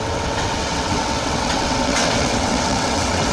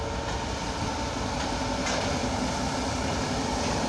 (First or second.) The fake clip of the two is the first